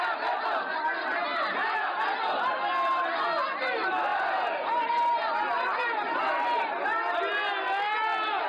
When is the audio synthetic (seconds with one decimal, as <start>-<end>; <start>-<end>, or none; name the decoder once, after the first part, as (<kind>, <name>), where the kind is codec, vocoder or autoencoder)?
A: none